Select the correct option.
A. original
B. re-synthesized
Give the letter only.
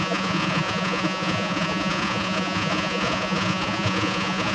B